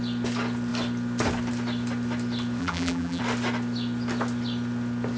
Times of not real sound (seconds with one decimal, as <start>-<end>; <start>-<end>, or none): 2.6-3.2